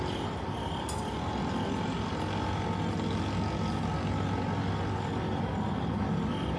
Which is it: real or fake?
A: real